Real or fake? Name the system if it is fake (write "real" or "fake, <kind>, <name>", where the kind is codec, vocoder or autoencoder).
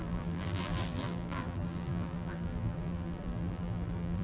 fake, vocoder, BigVGAN v2